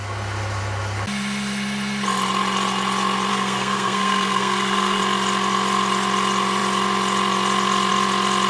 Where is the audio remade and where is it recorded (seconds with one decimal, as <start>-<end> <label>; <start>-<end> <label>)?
0.0-3.3 recorded; 3.3-5.0 remade; 5.0-8.5 recorded